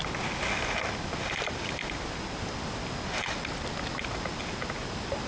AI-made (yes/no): no